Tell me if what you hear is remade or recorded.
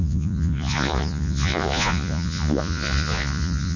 remade